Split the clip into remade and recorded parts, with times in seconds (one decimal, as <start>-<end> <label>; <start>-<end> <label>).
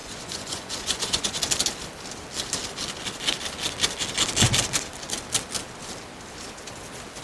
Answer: 0.0-1.4 remade; 1.4-7.2 recorded